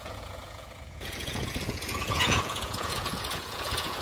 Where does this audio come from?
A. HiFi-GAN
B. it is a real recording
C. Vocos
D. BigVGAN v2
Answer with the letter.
C